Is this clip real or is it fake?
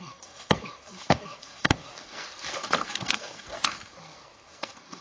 fake